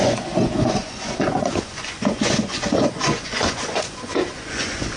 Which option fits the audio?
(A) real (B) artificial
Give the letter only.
B